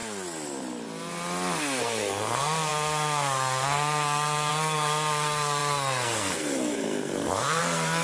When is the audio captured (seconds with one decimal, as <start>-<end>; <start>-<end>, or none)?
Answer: 0.0-1.8